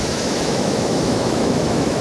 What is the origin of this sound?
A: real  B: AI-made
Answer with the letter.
B